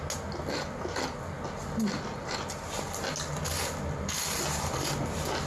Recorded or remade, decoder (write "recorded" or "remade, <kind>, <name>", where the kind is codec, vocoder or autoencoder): recorded